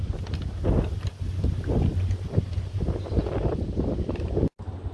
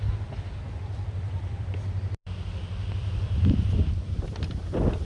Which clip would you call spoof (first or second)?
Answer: second